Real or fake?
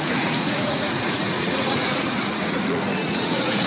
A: fake